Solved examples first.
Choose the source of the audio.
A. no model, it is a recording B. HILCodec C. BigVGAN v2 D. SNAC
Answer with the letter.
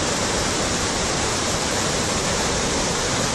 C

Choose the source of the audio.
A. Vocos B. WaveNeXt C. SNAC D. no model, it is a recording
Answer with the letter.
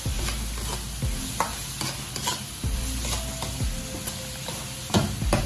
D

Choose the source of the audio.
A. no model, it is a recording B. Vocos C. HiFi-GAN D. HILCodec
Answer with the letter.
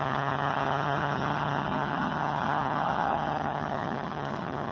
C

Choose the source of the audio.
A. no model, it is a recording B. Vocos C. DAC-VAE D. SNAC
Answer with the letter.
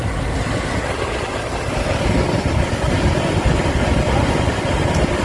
A